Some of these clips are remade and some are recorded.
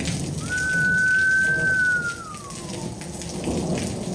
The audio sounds recorded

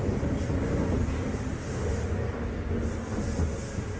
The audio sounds recorded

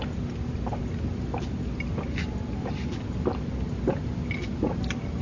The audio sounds recorded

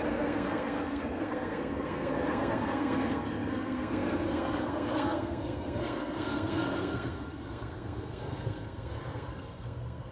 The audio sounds remade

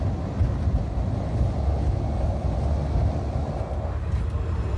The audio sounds recorded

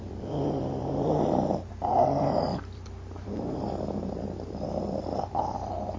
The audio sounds remade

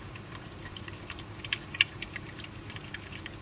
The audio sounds remade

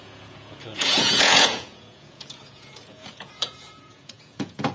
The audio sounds remade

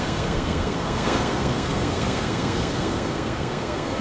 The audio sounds remade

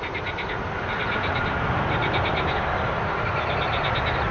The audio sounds recorded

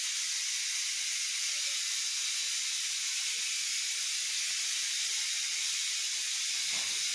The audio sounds recorded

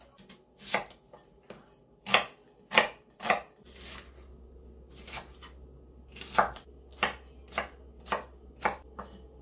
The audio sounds recorded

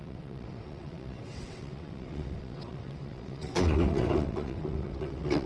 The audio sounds remade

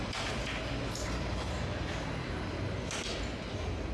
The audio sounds recorded